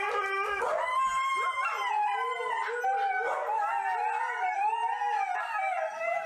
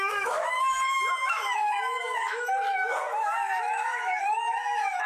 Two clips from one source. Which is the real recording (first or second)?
first